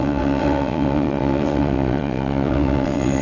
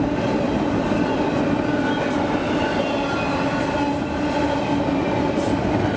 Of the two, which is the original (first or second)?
second